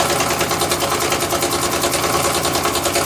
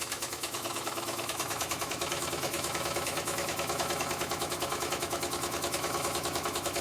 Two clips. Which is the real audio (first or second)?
first